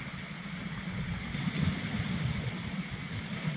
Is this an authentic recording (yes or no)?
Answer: yes